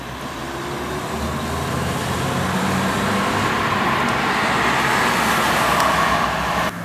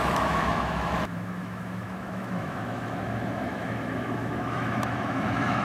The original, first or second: first